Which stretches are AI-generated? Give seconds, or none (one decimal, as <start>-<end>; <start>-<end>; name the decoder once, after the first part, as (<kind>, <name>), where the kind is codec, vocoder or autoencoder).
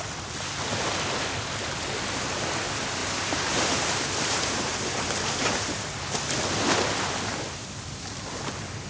3.0-6.0 (vocoder, BigVGAN v2)